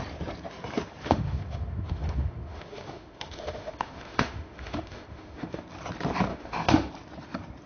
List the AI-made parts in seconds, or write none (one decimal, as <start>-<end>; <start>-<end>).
1.0-5.6; 6.3-6.9